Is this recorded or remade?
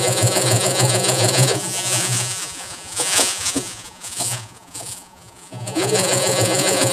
remade